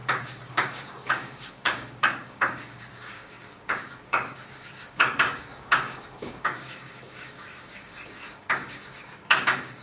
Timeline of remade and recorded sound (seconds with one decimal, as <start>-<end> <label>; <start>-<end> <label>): 0.0-9.8 remade